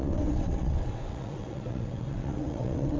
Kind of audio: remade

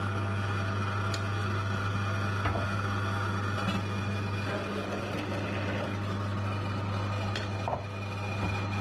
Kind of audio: recorded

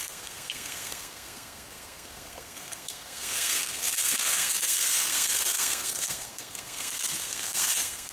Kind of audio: remade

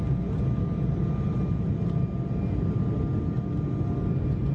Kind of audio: recorded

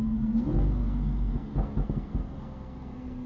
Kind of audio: remade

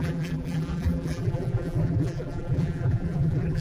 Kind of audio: remade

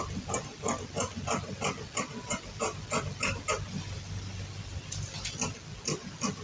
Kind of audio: recorded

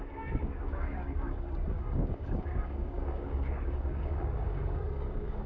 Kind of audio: remade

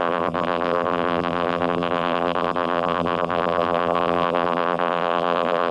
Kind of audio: remade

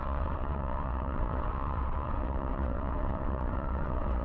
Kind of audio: remade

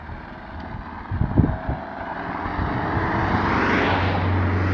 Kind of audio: recorded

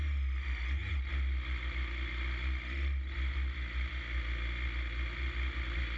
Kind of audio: recorded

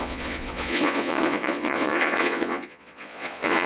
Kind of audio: remade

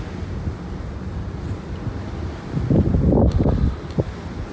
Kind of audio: recorded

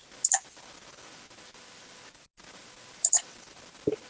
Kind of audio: recorded